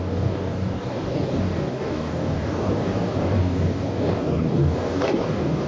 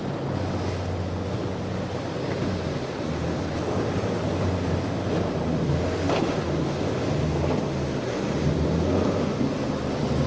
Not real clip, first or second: first